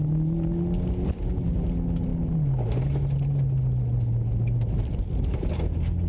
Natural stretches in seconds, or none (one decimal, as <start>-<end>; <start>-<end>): 0.0-6.1